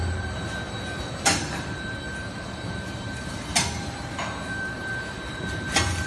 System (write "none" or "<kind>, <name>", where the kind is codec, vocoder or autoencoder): vocoder, BigVGAN v2